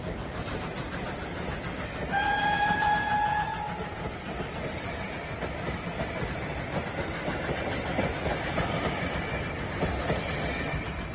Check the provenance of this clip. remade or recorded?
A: recorded